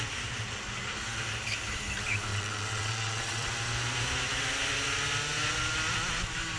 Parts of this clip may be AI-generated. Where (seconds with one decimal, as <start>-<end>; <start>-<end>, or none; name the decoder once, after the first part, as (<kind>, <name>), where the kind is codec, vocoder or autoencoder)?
2.3-3.5 (vocoder, WaveNeXt)